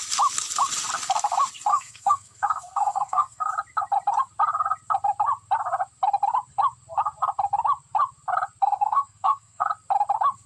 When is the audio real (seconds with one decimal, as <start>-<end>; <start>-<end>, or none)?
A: 0.0-1.7; 3.5-8.6; 9.7-10.5